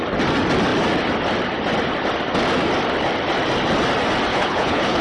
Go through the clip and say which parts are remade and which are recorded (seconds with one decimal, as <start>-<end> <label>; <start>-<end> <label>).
0.0-4.3 recorded; 4.3-5.0 remade